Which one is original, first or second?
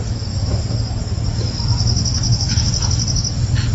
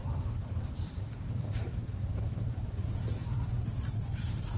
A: first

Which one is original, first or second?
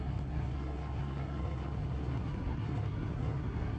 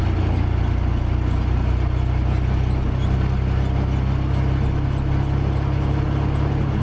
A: second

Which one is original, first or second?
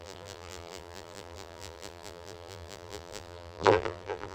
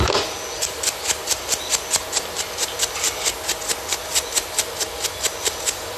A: second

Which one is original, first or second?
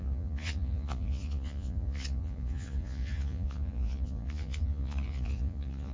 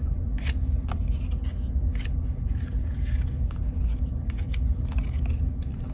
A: second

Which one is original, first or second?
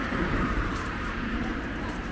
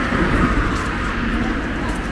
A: second